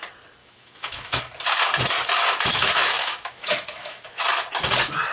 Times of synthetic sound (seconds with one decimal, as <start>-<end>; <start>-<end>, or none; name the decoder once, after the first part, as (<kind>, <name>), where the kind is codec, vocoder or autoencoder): 0.4-1.2 (autoencoder, DAC-VAE); 2.5-4.2